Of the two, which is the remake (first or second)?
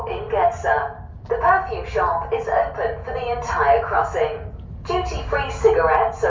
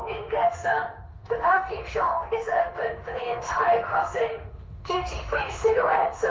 second